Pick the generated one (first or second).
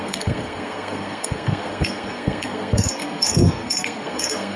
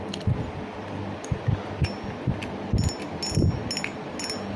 first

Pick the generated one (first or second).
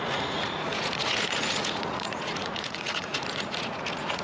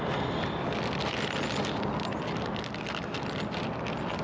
first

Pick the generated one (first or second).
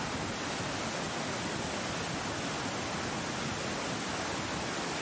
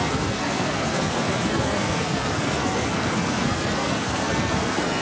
second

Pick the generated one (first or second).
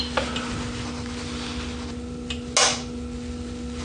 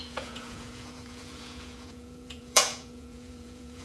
second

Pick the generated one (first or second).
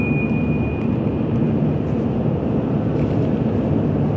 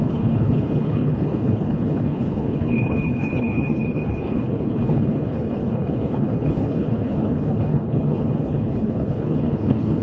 second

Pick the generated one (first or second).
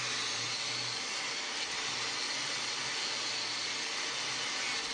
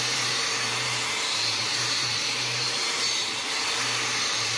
second